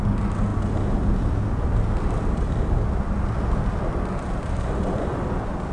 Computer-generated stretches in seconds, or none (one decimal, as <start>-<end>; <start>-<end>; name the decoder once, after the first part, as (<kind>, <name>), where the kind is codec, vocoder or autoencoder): none